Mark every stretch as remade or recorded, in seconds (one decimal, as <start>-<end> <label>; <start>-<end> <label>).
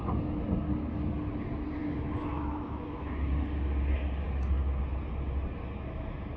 0.0-1.8 recorded; 1.8-3.3 remade; 3.3-6.4 recorded